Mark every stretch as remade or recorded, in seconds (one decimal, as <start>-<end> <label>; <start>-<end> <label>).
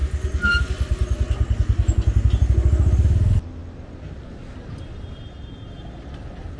0.0-6.6 recorded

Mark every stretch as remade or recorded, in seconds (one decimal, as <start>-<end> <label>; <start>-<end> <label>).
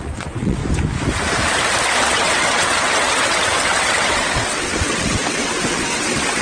0.0-0.6 remade; 0.6-2.0 recorded; 2.0-6.4 remade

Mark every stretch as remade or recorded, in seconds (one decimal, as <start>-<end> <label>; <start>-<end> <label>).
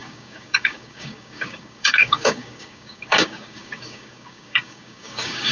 0.0-5.5 remade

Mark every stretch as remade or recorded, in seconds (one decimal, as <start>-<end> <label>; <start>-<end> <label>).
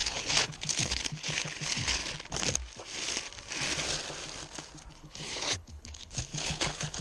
0.0-2.0 remade; 2.0-4.9 recorded; 4.9-7.0 remade